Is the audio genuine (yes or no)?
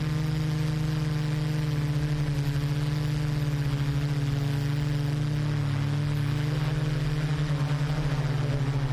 yes